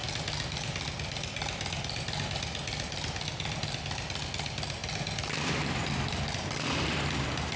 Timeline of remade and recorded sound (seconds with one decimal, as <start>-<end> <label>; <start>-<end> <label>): 0.0-4.8 recorded; 4.8-6.1 remade; 6.1-7.6 recorded